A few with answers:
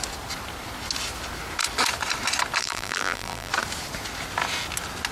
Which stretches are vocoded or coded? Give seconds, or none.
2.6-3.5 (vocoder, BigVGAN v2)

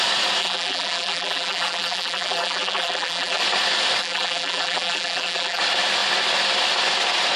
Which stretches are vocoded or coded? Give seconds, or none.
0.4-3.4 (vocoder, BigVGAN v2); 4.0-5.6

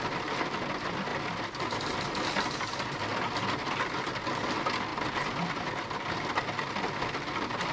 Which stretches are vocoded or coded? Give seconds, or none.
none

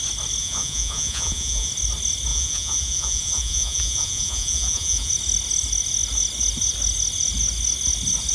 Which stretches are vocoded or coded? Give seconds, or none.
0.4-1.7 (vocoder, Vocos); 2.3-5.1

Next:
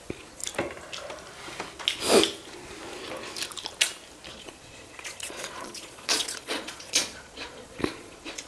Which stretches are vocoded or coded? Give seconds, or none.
0.0-0.4 (vocoder, Vocos); 4.3-8.5

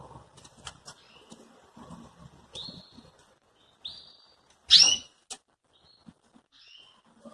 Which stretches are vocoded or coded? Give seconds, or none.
2.5-3.6 (vocoder, Vocos)

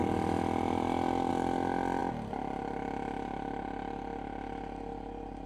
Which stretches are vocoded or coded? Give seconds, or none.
none

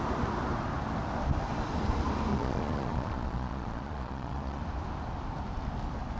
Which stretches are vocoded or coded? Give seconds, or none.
2.3-4.6 (vocoder, Vocos)